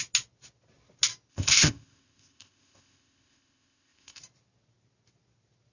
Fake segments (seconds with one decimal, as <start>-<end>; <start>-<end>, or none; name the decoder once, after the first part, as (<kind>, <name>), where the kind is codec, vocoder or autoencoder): 1.3-4.2 (codec, ZipCodec)